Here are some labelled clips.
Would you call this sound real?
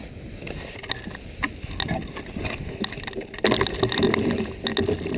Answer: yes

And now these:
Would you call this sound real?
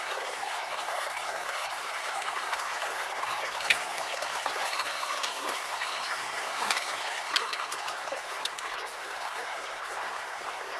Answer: no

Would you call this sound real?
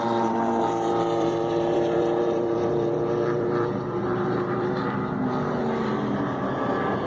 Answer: no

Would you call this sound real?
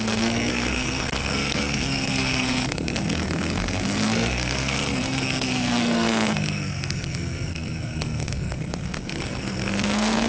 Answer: no